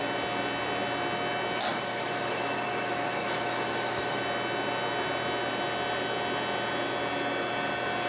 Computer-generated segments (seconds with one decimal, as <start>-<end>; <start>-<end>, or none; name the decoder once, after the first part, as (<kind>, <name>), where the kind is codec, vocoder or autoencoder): 1.7-4.2 (autoencoder, DAC-VAE)